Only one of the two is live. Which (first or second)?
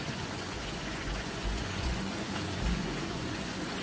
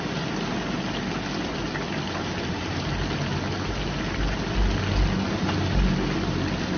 second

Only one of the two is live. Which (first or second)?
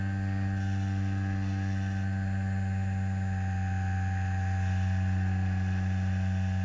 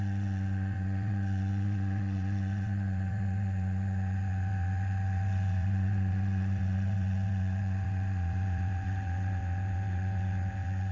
first